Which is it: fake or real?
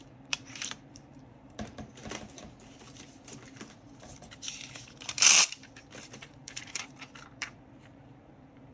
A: fake